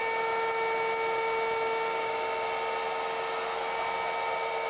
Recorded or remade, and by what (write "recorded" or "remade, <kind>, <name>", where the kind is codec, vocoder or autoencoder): recorded